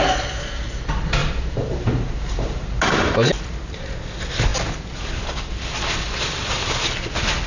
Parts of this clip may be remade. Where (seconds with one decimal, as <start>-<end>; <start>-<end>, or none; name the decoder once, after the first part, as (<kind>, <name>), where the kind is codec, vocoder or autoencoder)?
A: 1.2-3.3 (vocoder, BigVGAN v2)